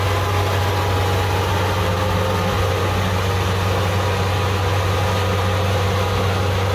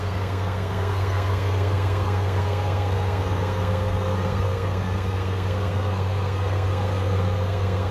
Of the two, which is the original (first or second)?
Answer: first